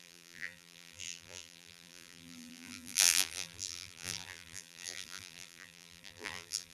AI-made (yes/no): yes